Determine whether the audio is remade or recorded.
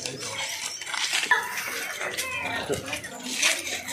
recorded